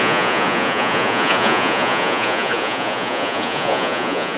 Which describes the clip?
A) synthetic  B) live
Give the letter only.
A